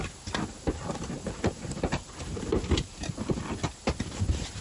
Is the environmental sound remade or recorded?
recorded